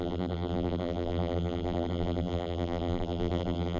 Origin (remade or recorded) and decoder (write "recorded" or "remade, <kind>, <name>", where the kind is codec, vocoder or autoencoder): remade, vocoder, BigVGAN v2